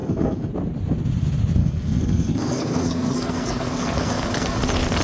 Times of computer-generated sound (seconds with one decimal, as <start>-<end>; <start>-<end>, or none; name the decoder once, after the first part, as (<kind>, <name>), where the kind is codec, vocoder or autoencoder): 0.0-0.5 (codec, SNAC); 1.6-4.6